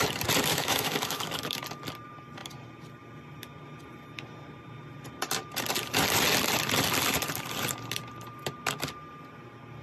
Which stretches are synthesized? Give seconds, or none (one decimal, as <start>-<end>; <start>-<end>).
0.5-1.2